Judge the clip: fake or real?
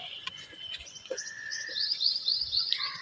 fake